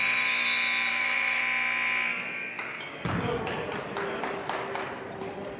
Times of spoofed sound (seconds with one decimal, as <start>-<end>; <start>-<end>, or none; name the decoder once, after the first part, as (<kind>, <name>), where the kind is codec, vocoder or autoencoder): 0.9-1.4 (codec, DAC); 2.7-3.4